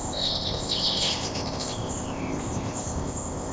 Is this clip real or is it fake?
fake